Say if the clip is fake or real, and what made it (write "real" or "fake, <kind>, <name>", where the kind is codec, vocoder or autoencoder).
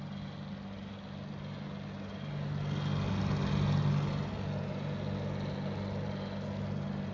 real